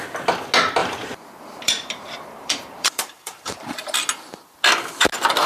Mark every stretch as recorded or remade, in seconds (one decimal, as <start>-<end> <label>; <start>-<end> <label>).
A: 0.0-0.8 recorded; 0.8-3.9 remade; 3.9-5.5 recorded